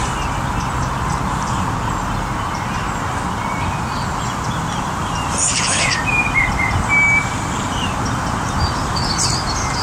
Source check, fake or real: real